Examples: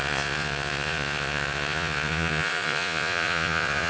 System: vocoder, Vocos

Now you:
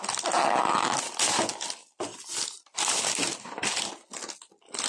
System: none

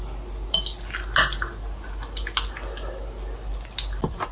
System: none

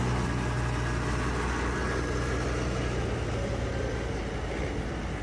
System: none